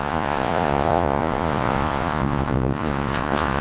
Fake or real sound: fake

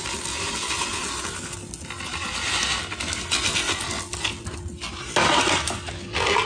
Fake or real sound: real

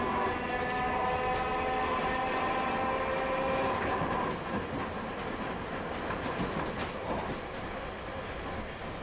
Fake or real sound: real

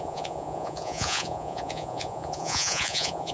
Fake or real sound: fake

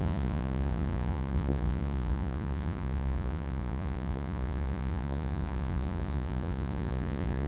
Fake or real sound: fake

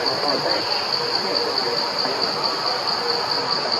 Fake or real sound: real